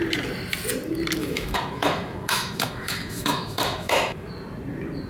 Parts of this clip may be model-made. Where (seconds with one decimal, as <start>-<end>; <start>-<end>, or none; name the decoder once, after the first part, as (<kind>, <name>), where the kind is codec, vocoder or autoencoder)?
1.2-4.3 (autoencoder, DAC-VAE)